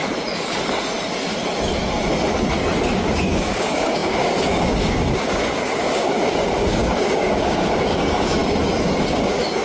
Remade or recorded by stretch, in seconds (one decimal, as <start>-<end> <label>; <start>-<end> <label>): 0.0-2.9 recorded; 2.9-8.4 remade; 8.4-9.0 recorded; 9.0-9.6 remade